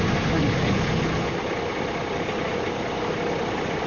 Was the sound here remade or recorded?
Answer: recorded